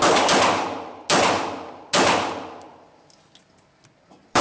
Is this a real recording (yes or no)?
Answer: yes